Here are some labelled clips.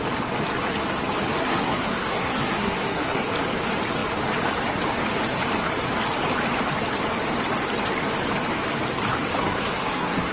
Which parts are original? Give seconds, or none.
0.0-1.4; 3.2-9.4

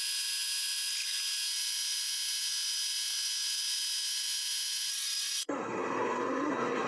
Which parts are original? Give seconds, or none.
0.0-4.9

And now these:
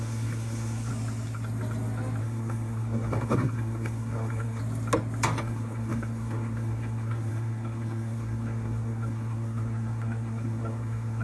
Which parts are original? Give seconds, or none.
0.9-2.2; 4.6-5.4

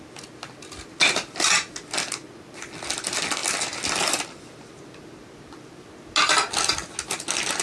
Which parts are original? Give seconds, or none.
0.0-7.6